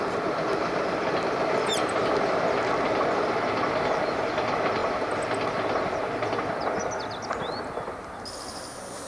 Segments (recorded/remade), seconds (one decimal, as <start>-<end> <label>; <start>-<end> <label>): 0.0-9.1 recorded